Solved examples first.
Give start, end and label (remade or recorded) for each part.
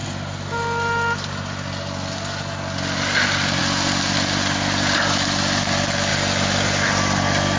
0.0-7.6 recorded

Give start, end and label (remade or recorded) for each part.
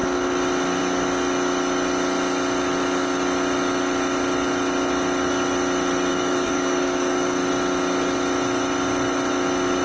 0.0-6.1 recorded; 6.1-7.5 remade; 7.5-9.8 recorded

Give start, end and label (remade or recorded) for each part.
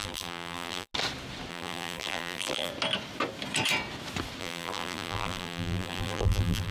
0.0-0.9 remade; 0.9-1.5 recorded; 1.5-2.7 remade; 2.7-4.4 recorded; 4.4-6.7 remade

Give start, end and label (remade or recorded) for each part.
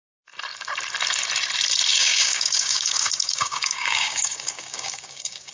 0.0-1.9 recorded; 1.9-5.5 remade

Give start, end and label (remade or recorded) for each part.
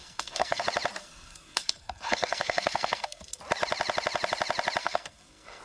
0.0-0.6 remade; 0.6-1.0 recorded; 1.0-3.4 remade; 3.4-4.8 recorded; 4.8-5.6 remade